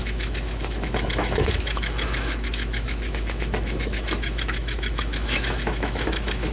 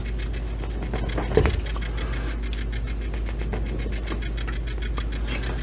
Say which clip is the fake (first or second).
first